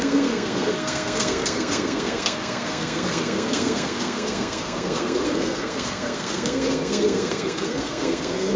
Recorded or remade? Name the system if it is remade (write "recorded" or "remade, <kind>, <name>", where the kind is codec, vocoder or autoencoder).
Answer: remade, codec, SNAC